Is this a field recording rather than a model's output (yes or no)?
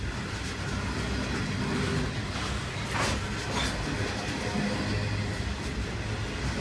yes